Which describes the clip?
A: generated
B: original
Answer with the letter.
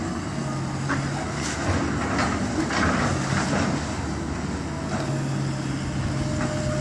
B